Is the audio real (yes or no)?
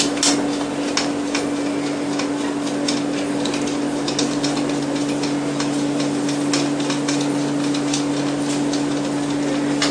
yes